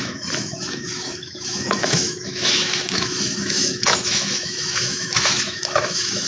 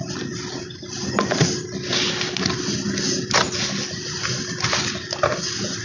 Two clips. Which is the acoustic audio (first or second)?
second